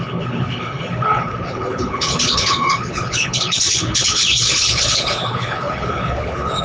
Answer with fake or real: fake